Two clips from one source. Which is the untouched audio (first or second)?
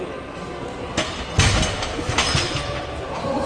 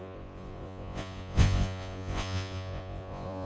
first